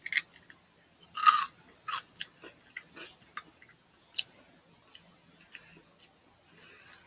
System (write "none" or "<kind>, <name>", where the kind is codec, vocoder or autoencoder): none